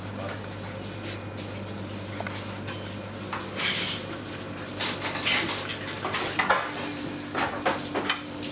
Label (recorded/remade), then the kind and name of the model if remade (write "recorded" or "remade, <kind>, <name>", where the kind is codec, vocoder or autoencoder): recorded